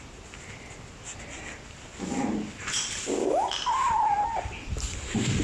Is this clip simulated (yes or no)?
no